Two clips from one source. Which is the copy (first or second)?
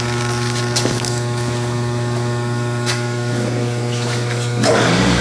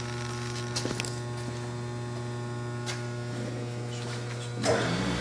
first